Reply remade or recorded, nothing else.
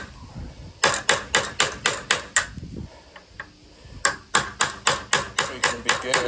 recorded